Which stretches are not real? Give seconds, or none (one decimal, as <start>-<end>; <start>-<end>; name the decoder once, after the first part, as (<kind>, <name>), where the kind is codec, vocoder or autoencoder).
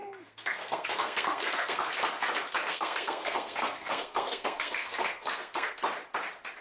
0.0-1.9 (codec, SNAC); 2.7-5.8